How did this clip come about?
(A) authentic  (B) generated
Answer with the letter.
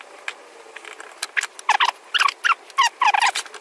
A